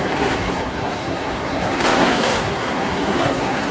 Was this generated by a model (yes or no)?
yes